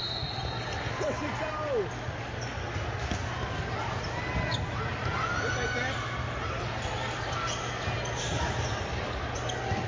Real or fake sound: real